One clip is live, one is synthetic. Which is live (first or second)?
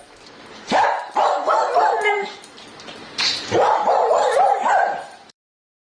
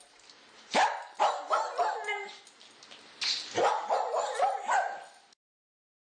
second